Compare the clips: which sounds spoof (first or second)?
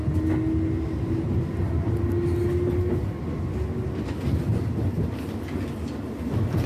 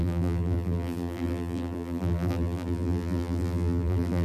second